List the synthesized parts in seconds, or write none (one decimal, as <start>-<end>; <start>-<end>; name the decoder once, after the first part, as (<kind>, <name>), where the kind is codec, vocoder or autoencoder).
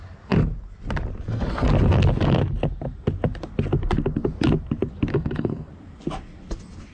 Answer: 5.1-5.7 (codec, SNAC)